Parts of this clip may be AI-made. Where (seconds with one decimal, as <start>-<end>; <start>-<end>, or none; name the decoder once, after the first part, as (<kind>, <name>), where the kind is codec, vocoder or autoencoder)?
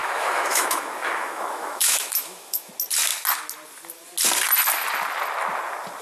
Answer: 0.0-2.7 (autoencoder, DAC-VAE)